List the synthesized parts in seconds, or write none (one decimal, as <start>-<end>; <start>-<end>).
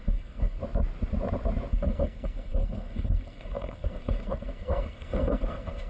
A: 0.0-0.6; 1.7-5.9